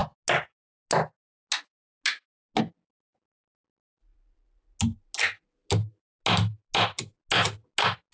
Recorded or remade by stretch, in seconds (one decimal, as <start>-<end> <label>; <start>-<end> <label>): 0.0-8.1 recorded